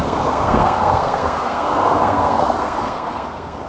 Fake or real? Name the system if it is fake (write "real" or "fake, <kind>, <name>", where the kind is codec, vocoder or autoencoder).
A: fake, codec, SNAC